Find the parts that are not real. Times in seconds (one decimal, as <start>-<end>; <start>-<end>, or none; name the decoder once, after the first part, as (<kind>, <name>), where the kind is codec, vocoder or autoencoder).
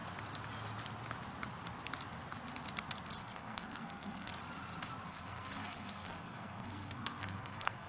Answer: 3.2-4.3 (codec, SNAC); 5.1-7.9